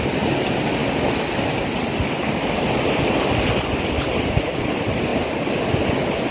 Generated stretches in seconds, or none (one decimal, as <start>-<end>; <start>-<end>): none